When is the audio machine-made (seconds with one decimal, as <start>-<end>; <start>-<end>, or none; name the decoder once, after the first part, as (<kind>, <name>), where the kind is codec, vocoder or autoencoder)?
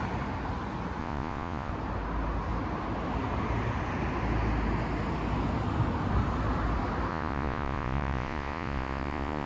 1.0-1.7 (vocoder, Vocos); 7.1-9.5